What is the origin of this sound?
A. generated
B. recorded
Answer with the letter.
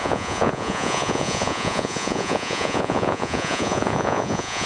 A